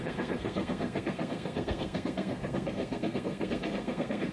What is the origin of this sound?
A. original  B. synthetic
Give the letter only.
B